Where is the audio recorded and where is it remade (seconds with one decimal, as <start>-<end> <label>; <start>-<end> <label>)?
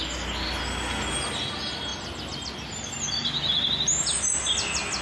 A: 0.0-5.0 recorded